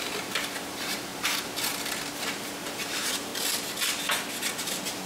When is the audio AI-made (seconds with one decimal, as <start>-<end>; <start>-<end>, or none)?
0.0-1.1; 2.2-3.3; 4.6-5.1